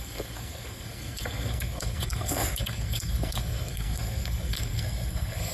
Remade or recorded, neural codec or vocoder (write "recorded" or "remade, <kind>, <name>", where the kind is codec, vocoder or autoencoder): remade, codec, SNAC